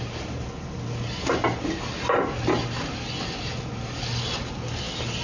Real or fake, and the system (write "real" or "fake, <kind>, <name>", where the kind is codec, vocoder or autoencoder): real